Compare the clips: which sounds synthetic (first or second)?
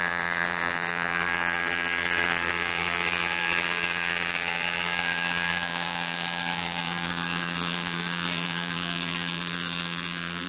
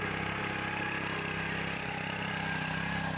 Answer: first